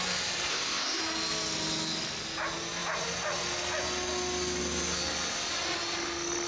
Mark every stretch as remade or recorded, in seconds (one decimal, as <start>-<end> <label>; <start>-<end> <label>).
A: 0.0-0.5 recorded; 0.5-1.0 remade; 1.0-6.5 recorded